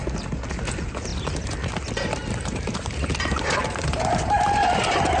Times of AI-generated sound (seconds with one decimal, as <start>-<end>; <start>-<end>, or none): 2.2-5.2